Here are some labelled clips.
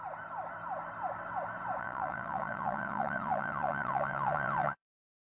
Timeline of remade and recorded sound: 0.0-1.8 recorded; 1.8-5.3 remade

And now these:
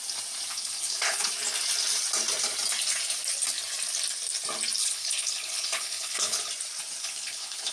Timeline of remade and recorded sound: 0.0-0.5 recorded; 0.5-1.3 remade; 1.3-4.8 recorded; 4.8-6.5 remade; 6.5-7.0 recorded; 7.0-7.7 remade

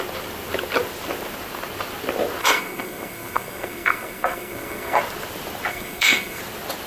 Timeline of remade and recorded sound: 0.0-2.4 recorded; 2.4-5.0 remade; 5.0-5.7 recorded; 5.7-6.4 remade; 6.4-6.9 recorded

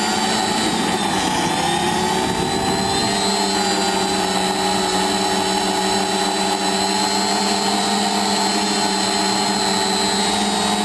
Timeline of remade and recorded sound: 0.0-10.8 recorded

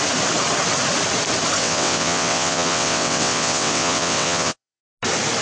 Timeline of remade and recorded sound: 0.0-1.6 recorded; 1.6-4.8 remade; 4.8-5.4 recorded

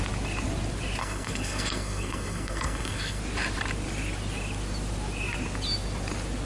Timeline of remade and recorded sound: 0.0-1.0 recorded; 1.0-3.2 remade; 3.2-6.5 recorded

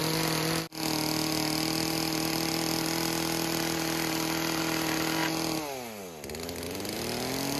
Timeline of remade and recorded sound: 0.0-7.6 recorded

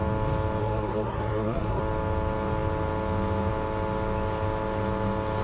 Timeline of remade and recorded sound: 0.0-0.6 recorded; 0.6-1.8 remade; 1.8-5.4 recorded